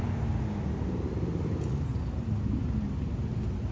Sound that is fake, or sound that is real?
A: real